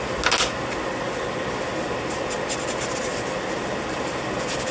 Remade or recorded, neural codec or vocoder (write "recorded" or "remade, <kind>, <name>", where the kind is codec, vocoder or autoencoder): recorded